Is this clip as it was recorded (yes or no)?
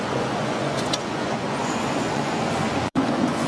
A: no